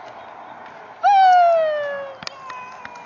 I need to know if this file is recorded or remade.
recorded